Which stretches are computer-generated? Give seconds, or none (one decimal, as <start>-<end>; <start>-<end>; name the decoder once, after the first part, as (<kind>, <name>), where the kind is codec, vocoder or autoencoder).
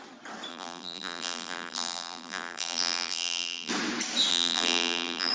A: 0.5-3.7 (vocoder, BigVGAN v2); 4.3-5.3